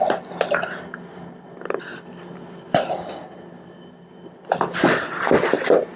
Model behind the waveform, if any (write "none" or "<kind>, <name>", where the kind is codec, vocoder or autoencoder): none